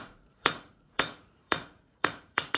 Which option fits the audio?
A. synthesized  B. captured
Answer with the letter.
A